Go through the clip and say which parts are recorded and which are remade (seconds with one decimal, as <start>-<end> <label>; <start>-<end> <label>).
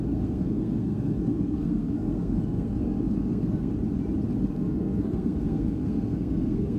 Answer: 0.0-3.7 remade; 3.7-4.5 recorded; 4.5-6.8 remade